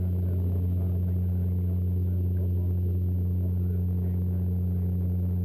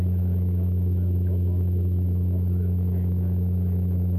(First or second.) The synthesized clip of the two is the second